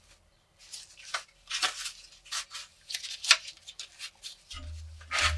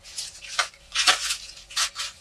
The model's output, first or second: second